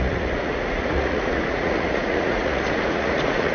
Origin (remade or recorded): remade